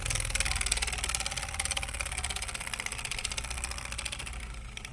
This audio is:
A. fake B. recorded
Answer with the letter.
B